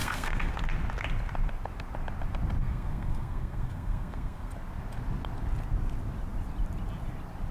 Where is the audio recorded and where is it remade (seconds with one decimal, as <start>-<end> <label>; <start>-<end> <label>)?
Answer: 0.0-0.5 remade; 0.5-2.6 recorded; 2.6-4.5 remade; 4.5-7.5 recorded